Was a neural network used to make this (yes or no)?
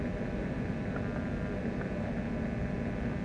no